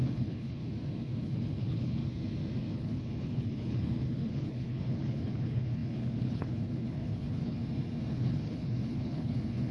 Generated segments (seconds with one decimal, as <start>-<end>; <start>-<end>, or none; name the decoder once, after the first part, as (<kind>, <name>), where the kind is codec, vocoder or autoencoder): 0.0-0.6 (codec, HILCodec); 1.2-2.0; 2.7-7.6; 8.1-9.7